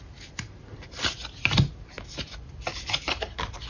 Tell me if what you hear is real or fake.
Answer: real